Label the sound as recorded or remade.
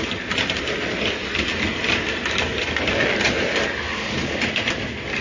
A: recorded